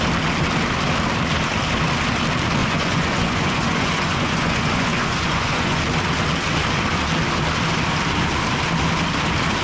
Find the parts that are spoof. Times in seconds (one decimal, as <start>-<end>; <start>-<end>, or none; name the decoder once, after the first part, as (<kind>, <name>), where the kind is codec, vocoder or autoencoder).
2.6-5.8 (vocoder, Vocos)